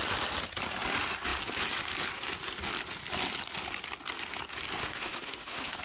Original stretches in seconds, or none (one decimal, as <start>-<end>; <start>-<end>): 0.0-4.8